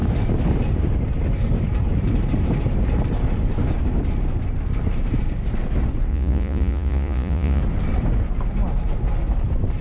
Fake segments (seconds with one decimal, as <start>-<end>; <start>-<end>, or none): 6.1-7.6